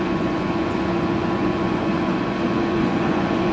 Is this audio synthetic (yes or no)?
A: yes